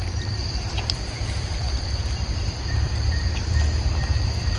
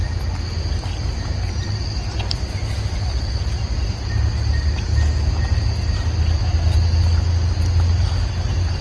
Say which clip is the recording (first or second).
second